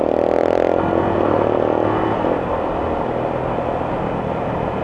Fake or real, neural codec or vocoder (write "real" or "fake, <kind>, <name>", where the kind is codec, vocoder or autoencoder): real